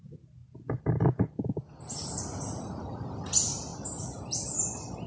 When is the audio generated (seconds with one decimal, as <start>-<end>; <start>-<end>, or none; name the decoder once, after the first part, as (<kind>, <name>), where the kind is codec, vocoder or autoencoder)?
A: none